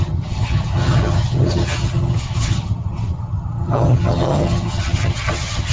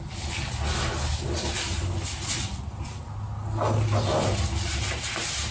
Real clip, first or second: second